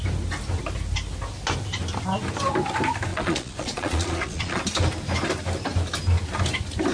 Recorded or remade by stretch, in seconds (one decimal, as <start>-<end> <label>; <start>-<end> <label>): 0.0-3.1 recorded; 3.1-4.6 remade; 4.6-6.9 recorded